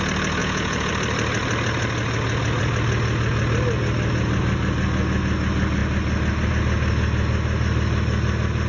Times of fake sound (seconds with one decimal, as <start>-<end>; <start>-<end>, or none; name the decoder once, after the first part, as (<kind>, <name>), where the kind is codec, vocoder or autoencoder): 0.4-0.9 (vocoder, Vocos)